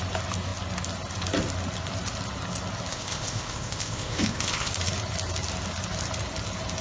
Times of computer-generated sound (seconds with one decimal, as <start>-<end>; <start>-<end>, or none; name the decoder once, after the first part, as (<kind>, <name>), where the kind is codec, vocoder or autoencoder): 2.9-4.7 (codec, ZipCodec)